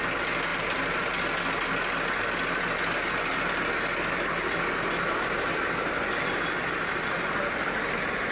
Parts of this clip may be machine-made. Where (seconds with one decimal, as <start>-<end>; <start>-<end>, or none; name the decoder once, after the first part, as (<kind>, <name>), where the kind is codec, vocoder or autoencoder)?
none